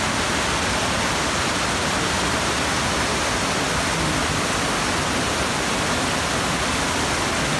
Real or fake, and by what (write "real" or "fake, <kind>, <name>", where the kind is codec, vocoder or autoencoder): real